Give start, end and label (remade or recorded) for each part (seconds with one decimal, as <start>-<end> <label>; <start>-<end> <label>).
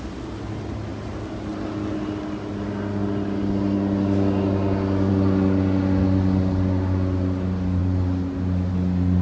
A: 0.0-9.2 recorded